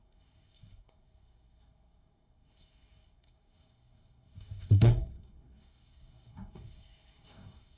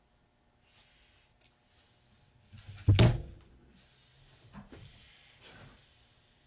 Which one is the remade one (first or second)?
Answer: first